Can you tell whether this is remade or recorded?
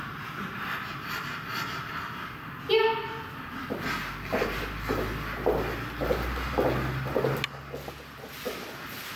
recorded